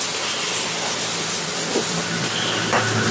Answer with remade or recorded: remade